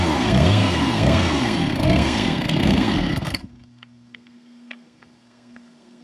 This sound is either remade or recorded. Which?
remade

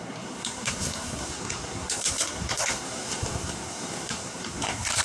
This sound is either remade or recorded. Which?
remade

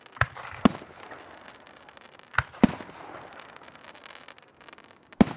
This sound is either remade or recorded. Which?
recorded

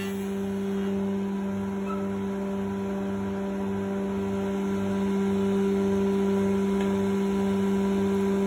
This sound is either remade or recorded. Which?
recorded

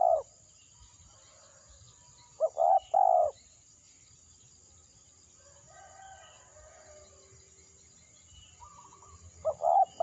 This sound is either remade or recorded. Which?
recorded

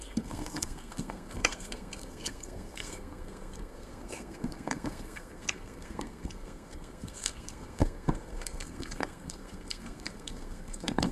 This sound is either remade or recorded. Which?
remade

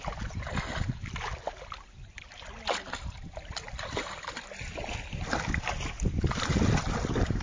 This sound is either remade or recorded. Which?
recorded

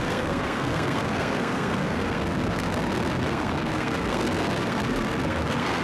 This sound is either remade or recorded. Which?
remade